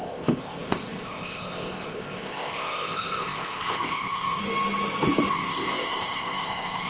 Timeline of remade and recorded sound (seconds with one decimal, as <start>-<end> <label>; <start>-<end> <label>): 0.0-4.4 remade; 4.4-5.3 recorded; 5.3-6.9 remade